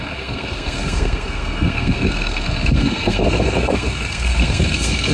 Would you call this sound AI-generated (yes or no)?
yes